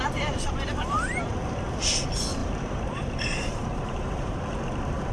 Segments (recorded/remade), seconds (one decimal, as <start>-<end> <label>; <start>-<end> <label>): 0.0-2.4 recorded; 2.4-4.3 remade; 4.3-5.1 recorded